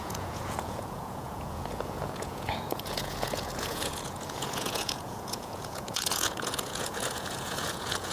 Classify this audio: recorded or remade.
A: remade